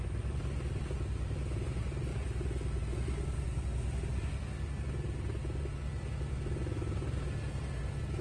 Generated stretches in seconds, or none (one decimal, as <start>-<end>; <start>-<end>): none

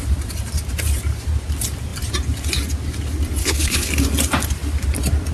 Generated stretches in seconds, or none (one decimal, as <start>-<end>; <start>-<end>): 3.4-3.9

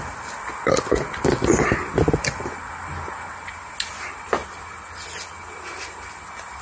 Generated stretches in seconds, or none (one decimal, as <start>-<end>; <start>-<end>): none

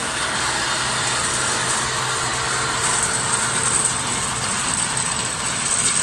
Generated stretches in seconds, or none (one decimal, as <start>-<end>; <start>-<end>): none

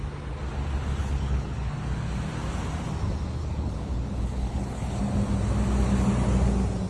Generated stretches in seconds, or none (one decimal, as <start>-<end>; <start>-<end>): 1.0-1.7; 3.4-5.0

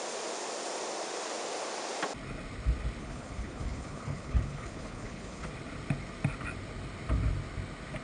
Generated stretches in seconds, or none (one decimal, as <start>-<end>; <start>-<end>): 3.0-5.5

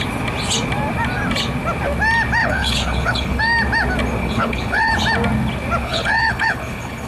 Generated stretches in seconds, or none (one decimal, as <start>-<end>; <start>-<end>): 2.4-3.4; 4.2-4.9; 5.8-7.1

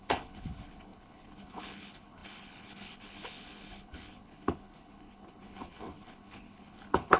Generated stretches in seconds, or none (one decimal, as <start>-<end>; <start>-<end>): 0.0-7.2